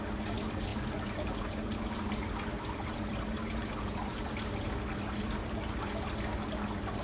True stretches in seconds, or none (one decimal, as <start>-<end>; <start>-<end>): 0.0-7.0